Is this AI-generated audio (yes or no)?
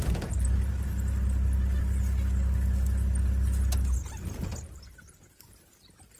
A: no